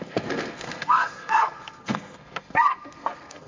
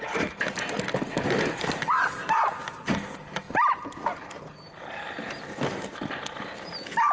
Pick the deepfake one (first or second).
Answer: first